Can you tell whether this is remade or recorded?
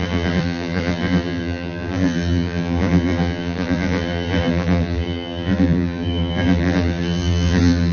remade